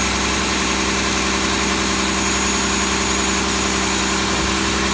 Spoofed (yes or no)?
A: no